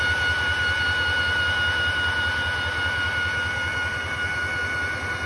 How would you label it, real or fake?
real